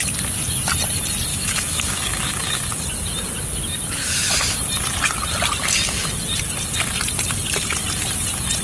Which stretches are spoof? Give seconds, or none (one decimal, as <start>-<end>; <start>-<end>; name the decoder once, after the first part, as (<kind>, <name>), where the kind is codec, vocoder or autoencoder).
1.3-2.6 (autoencoder, DAC-VAE)